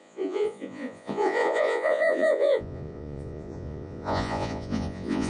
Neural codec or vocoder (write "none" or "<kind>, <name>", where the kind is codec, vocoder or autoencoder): vocoder, Vocos